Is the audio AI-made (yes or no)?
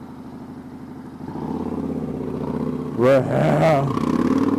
no